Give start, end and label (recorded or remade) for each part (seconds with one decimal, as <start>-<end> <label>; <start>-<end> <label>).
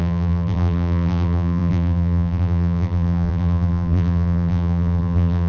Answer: 0.0-5.5 remade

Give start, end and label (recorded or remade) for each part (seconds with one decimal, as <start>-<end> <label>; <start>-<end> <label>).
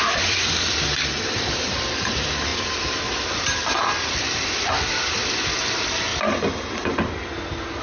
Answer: 0.0-2.5 remade; 2.5-3.1 recorded; 3.1-6.1 remade; 6.1-7.8 recorded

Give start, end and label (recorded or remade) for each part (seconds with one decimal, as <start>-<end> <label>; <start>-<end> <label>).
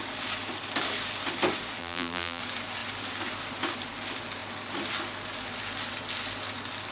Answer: 0.0-1.8 recorded; 1.8-2.4 remade; 2.4-6.9 recorded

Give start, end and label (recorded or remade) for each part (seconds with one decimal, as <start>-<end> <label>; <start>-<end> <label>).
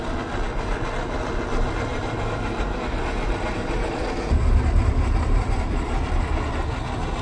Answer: 0.0-1.9 recorded; 1.9-6.2 remade; 6.2-7.2 recorded